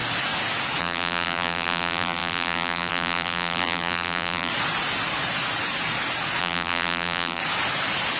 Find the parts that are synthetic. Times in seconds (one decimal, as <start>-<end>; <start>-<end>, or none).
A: 0.8-4.5; 6.4-7.4